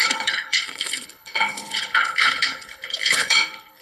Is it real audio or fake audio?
fake